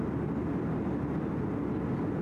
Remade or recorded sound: recorded